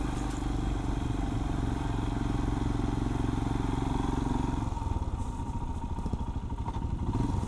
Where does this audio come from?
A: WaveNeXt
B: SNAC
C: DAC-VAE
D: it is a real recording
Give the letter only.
D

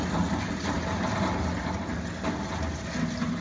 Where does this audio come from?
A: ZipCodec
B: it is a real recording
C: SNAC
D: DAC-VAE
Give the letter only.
B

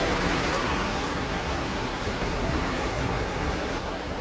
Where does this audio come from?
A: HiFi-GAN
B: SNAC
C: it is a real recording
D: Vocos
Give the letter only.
B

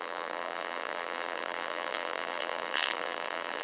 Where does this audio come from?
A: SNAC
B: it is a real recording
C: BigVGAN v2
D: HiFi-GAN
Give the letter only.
C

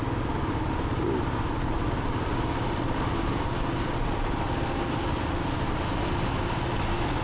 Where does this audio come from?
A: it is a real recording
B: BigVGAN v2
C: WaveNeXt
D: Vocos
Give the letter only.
A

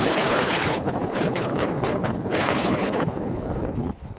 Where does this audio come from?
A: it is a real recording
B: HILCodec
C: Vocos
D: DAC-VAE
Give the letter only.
B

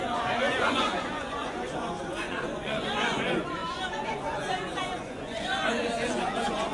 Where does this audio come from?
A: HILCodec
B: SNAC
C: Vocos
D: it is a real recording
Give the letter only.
C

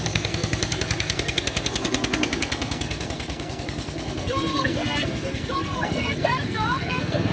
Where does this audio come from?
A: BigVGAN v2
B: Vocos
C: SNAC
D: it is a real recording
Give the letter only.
C